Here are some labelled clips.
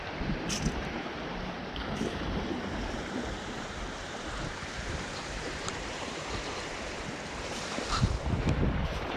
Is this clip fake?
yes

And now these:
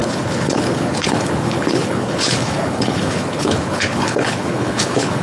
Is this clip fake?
yes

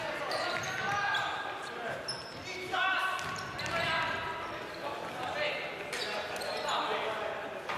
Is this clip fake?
no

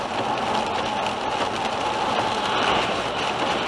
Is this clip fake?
no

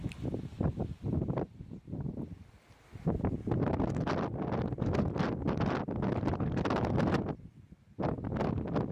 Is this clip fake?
no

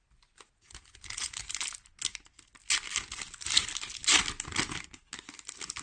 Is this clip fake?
no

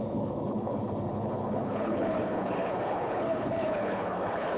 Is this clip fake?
yes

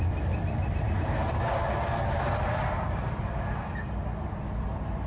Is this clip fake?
no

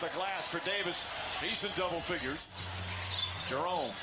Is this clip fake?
no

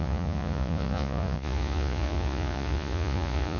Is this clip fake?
yes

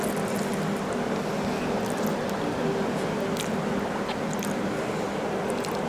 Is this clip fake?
no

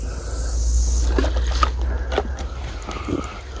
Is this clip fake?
no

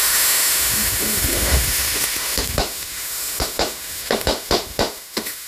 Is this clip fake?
yes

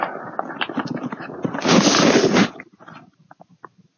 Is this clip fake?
no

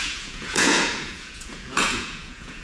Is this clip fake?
yes